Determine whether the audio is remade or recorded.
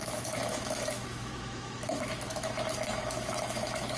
remade